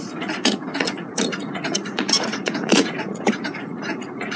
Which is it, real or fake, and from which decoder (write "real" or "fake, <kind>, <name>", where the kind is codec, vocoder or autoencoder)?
fake, vocoder, Vocos